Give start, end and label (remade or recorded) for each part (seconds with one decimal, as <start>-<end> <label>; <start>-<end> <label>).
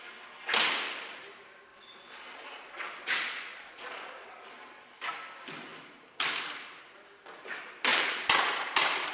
0.0-1.7 recorded; 1.7-4.3 remade; 4.3-7.9 recorded; 7.9-8.7 remade; 8.7-9.1 recorded